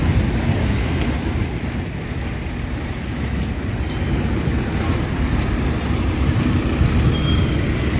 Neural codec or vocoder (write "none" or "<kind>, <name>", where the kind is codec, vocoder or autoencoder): none